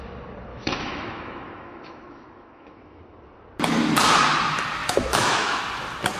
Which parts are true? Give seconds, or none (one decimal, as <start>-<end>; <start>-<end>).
0.0-0.5; 3.0-4.8; 5.6-6.2